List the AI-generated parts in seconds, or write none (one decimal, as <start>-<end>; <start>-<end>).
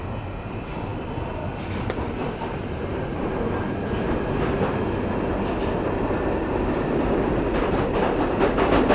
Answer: none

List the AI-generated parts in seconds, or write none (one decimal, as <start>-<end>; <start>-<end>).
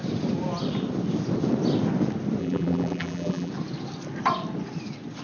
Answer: 2.4-3.5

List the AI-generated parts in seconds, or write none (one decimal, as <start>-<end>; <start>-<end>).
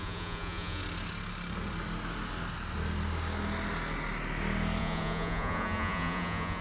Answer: 0.0-0.8; 4.8-6.6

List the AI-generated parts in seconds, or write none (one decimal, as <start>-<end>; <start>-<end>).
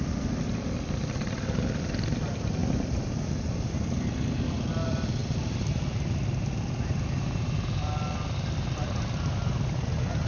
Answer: 5.2-5.8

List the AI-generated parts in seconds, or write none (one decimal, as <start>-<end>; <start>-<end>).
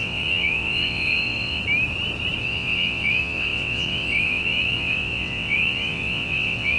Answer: 0.0-1.6; 2.4-6.8